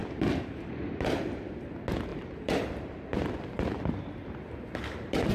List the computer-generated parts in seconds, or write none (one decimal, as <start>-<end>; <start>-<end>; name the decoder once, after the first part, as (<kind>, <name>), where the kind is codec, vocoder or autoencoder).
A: 2.1-5.3 (vocoder, BigVGAN v2)